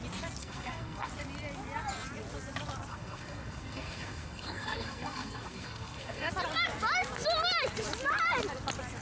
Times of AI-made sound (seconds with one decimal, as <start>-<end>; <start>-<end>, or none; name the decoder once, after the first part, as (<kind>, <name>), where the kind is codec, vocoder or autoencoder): 0.4-1.1 (codec, SNAC); 2.9-6.3